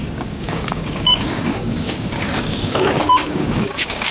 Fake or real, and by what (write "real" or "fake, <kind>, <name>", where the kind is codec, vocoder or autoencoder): fake, codec, DAC